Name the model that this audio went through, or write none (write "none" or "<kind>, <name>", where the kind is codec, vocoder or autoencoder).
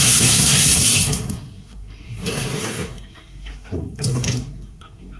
codec, SNAC